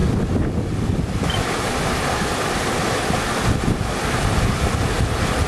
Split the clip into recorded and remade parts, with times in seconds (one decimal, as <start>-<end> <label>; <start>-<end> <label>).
0.0-5.5 recorded